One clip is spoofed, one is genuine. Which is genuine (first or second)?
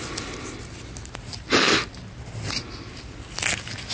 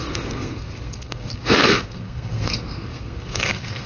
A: first